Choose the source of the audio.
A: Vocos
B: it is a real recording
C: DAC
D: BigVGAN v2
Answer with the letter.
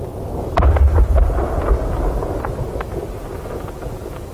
B